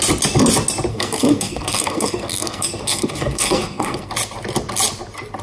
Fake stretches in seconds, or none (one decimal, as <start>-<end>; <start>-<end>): 0.9-4.1